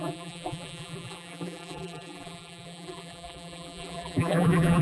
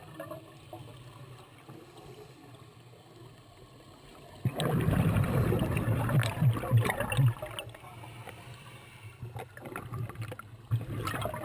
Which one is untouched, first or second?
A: second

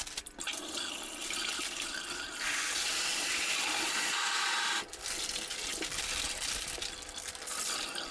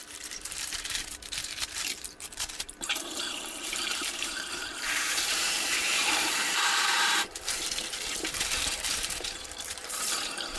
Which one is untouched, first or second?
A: first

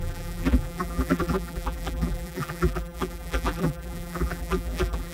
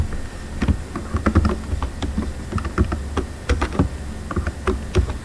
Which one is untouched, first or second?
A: second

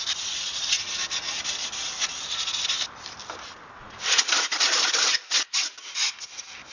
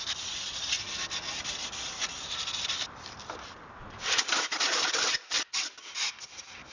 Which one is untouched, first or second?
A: first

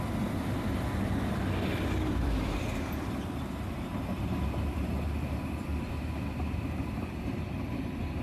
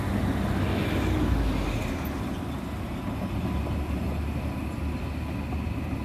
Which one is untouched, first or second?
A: second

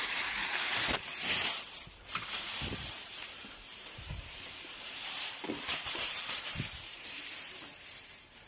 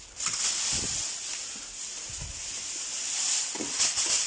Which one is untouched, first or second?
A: second